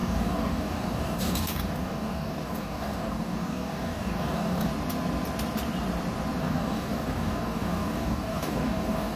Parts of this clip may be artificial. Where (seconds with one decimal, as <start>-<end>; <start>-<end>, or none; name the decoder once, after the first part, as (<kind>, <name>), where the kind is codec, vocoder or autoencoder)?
0.0-4.7 (codec, DAC); 6.4-9.2